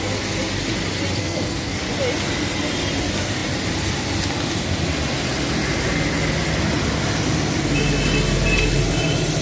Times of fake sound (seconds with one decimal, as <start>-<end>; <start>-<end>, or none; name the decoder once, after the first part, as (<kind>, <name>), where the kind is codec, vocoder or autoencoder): 1.2-1.8 (codec, SNAC)